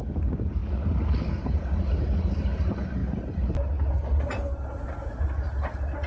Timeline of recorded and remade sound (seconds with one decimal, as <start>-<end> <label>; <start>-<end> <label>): 0.0-6.1 recorded